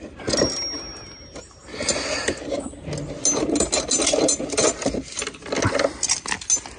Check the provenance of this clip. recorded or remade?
recorded